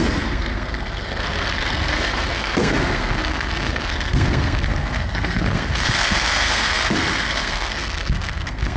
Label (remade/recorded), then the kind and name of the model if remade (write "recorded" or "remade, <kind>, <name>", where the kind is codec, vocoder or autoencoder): remade, codec, SNAC